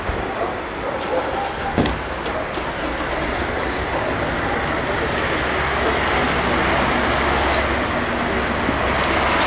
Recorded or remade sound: recorded